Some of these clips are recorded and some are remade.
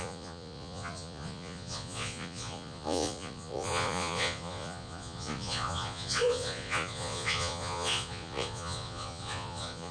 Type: remade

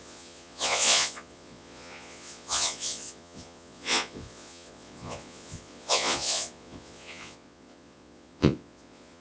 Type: remade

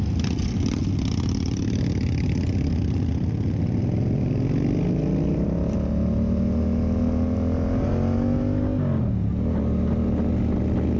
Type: recorded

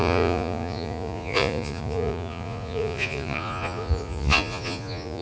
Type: remade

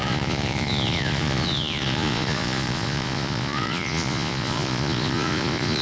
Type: remade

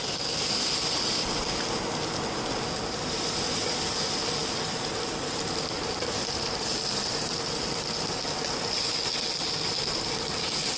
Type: recorded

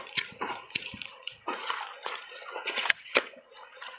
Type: remade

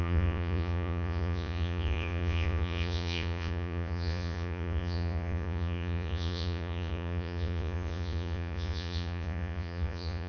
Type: remade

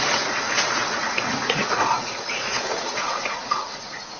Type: remade